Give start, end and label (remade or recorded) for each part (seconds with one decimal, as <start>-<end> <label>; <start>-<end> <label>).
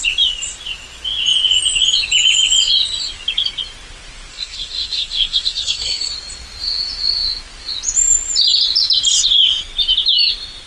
0.0-4.3 recorded; 4.3-6.1 remade; 6.1-10.7 recorded